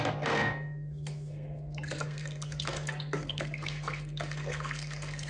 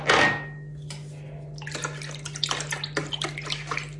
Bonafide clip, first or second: second